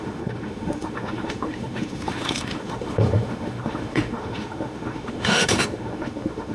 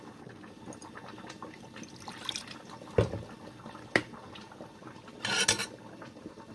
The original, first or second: second